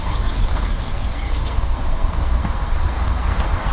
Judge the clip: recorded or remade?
remade